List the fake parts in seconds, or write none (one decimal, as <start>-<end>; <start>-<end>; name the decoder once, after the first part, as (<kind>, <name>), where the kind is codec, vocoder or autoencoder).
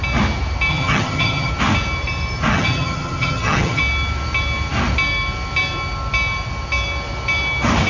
0.7-1.5 (vocoder, HiFi-GAN); 2.5-3.8